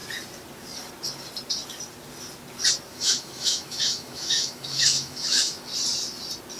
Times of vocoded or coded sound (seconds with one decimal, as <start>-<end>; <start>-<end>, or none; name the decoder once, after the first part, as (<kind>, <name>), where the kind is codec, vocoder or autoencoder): 2.9-5.6 (autoencoder, DAC-VAE)